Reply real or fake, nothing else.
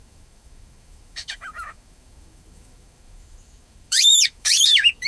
fake